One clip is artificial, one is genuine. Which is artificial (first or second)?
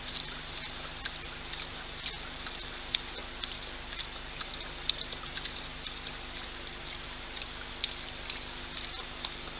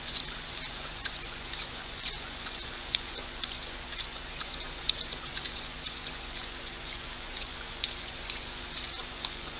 second